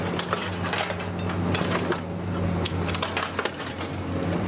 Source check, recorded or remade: recorded